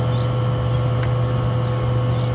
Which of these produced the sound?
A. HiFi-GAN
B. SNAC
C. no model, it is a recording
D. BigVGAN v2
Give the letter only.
C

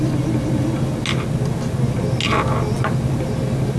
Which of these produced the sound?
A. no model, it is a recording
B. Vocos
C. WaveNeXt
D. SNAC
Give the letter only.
A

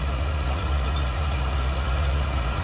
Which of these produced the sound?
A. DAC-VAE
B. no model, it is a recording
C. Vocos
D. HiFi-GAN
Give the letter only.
C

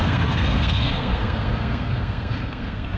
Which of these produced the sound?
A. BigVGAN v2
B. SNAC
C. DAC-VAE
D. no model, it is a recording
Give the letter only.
B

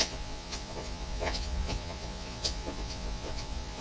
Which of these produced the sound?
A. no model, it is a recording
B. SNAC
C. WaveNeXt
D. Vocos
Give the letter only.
D